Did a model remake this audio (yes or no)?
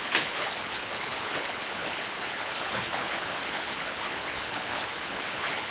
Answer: yes